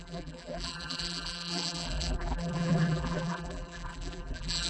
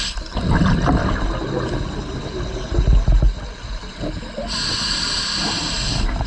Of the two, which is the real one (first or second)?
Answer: second